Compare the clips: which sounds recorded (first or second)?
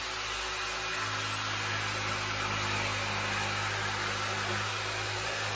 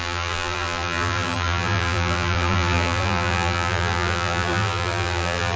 first